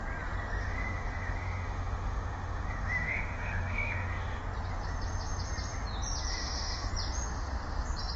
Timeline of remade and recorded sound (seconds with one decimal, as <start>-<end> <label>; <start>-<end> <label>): 0.0-0.6 recorded; 0.6-4.4 remade; 4.4-6.3 recorded; 6.3-6.9 remade; 6.9-8.2 recorded